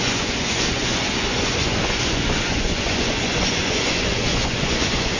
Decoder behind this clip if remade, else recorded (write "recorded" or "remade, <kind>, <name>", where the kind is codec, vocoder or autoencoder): remade, vocoder, Vocos